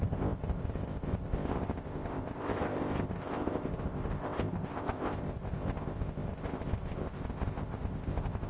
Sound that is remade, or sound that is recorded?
remade